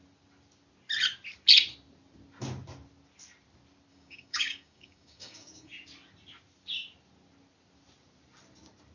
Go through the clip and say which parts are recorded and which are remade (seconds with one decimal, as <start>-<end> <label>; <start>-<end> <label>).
0.0-3.9 recorded; 3.9-5.7 remade; 5.7-8.9 recorded